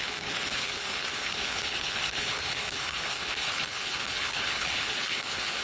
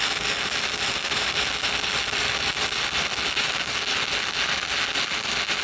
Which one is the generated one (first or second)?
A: first